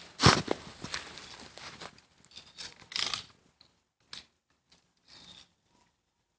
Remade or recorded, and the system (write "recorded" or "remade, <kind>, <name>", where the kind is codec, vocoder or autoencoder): recorded